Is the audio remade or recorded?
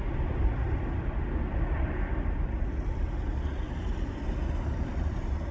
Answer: recorded